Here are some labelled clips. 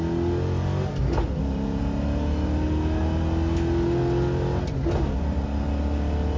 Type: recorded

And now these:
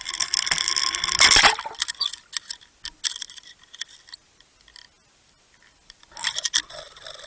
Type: recorded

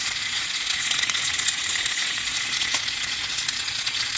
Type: remade